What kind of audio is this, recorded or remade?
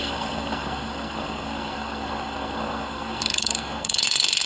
remade